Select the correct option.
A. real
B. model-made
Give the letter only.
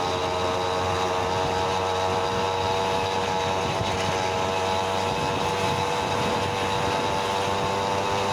A